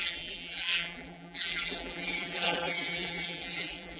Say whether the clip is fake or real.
fake